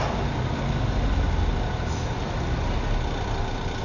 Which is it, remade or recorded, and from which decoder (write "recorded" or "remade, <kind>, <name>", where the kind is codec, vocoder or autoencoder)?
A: recorded